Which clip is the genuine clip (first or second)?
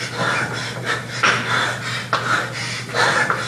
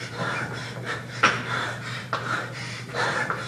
first